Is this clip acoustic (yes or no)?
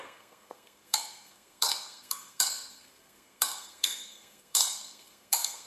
no